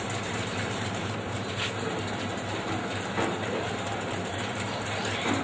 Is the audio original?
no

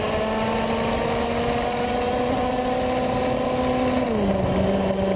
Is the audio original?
yes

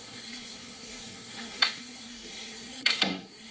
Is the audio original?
no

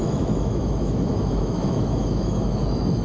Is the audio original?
no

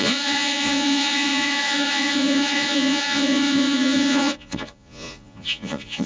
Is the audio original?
no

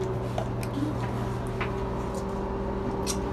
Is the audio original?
yes